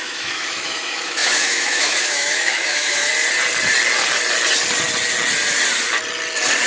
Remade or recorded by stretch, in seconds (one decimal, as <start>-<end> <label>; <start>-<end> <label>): 0.0-3.1 remade; 3.1-6.7 recorded